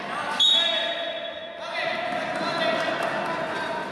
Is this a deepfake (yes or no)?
no